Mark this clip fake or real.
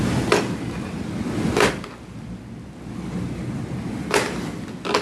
real